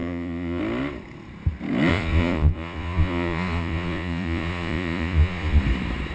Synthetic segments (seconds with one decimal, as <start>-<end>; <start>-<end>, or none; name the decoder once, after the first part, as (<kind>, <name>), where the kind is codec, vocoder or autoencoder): 0.0-0.6 (vocoder, Vocos); 1.9-5.6